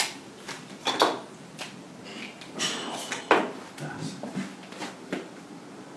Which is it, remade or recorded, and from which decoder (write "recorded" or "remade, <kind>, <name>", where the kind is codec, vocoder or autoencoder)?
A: recorded